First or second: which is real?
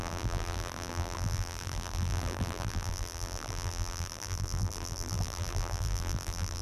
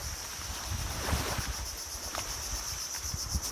second